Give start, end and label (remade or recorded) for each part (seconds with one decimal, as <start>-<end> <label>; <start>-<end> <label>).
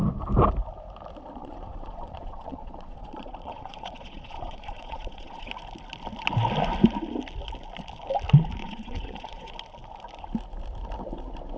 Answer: 0.0-1.4 recorded; 1.4-5.5 remade; 5.5-8.6 recorded; 8.6-9.5 remade; 9.5-11.6 recorded